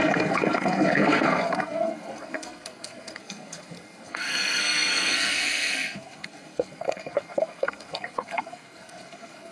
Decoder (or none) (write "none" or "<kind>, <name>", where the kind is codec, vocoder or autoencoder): codec, SNAC